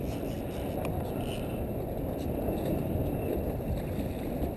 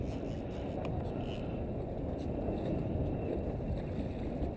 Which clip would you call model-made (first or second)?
first